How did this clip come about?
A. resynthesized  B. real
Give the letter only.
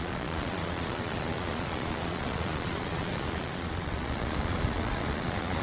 A